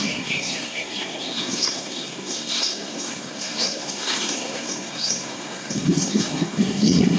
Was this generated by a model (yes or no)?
yes